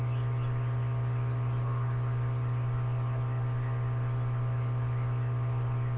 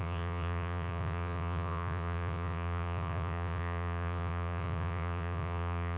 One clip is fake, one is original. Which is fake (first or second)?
second